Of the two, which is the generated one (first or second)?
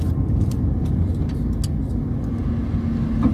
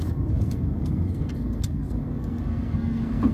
second